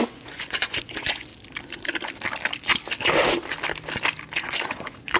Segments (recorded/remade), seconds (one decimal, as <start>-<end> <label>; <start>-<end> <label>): 0.0-1.3 remade; 1.3-4.4 recorded; 4.4-5.2 remade